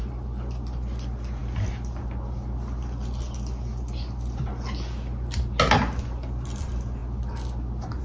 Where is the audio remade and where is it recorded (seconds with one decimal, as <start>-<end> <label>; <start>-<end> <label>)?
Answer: 0.0-8.0 recorded